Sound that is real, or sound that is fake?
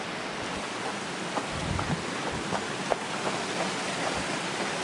real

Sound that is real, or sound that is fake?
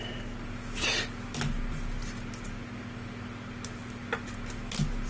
real